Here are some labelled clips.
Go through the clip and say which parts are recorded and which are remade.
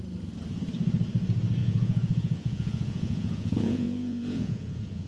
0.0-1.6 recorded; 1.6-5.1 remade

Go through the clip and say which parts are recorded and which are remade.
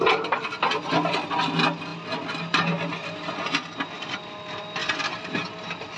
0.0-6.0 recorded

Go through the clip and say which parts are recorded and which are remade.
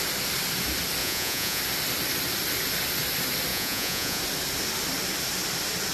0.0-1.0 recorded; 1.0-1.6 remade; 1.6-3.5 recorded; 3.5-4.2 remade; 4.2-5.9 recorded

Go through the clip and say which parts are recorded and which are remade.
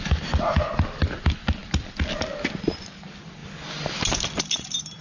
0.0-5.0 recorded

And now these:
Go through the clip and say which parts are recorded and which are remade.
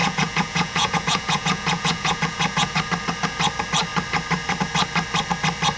0.0-2.8 remade; 2.8-5.8 recorded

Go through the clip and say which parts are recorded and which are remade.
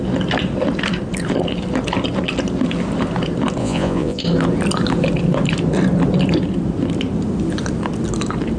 0.0-3.6 recorded; 3.6-4.2 remade; 4.2-8.6 recorded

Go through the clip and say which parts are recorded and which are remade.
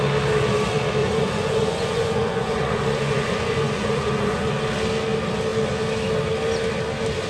0.0-1.0 recorded; 1.0-4.5 remade; 4.5-7.3 recorded